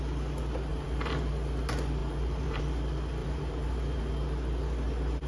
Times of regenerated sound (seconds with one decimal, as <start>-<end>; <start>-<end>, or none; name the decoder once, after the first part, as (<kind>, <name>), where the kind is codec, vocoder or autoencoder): 0.7-1.3 (vocoder, BigVGAN v2); 2.0-2.6; 3.2-4.0